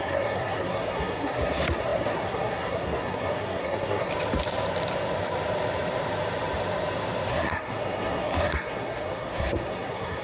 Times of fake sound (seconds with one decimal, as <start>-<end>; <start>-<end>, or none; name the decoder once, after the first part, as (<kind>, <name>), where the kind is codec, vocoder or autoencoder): 0.0-4.1 (codec, SNAC); 7.3-10.2